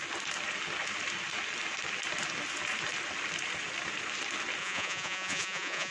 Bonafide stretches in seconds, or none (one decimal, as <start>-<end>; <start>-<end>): 0.0-4.6